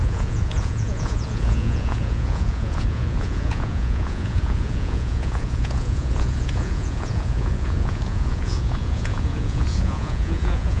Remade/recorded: remade